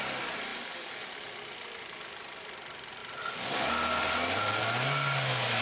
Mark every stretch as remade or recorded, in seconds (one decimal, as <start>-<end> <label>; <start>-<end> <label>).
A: 0.0-5.6 recorded